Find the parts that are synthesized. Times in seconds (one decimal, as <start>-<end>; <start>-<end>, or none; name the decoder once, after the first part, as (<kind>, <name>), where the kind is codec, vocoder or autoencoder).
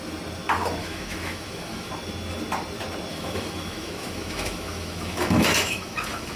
0.8-1.9 (autoencoder, DAC-VAE); 3.1-6.4